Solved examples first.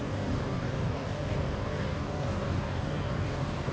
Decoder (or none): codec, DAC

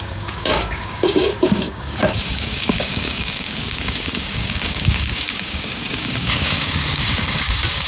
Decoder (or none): codec, DAC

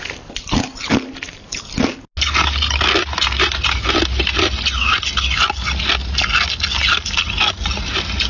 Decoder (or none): none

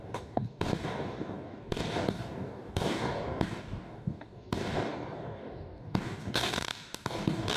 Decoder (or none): codec, DAC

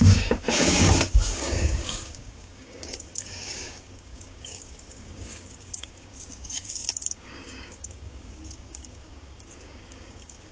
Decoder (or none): codec, DAC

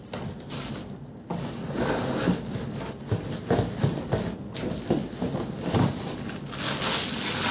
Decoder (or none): none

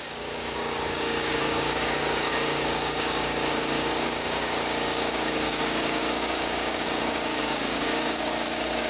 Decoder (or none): codec, DAC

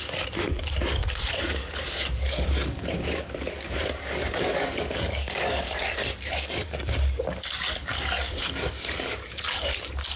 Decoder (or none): codec, DAC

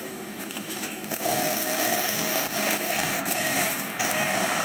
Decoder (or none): codec, DAC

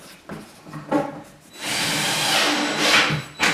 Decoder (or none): none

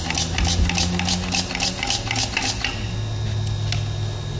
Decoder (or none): none